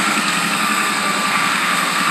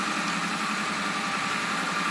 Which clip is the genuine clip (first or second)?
second